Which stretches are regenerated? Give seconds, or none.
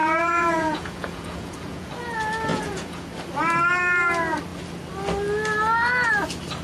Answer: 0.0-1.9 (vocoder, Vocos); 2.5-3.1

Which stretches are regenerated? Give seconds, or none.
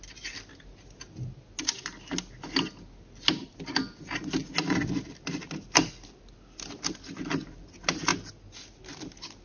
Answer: none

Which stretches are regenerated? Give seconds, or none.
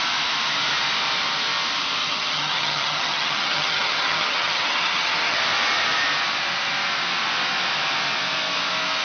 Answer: 2.0-5.4 (vocoder, HiFi-GAN)